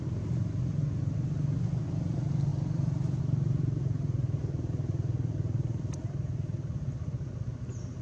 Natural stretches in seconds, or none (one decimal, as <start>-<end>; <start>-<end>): 0.0-8.0